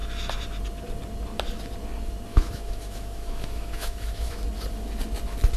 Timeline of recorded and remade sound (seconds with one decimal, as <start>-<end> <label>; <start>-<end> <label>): 0.0-2.3 recorded; 2.3-4.4 remade; 4.4-5.6 recorded